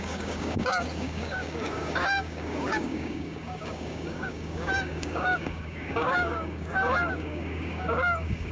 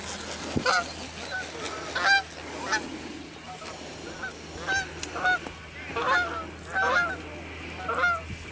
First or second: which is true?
second